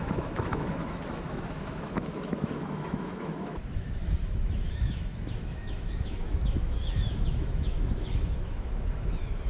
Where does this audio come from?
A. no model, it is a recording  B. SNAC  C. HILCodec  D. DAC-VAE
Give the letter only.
D